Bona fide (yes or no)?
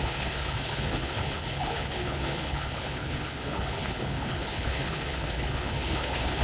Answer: no